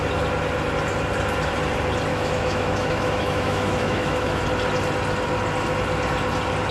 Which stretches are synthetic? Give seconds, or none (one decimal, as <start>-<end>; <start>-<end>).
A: 2.1-4.4